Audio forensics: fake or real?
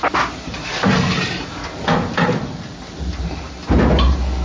real